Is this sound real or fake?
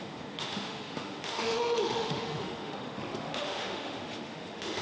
fake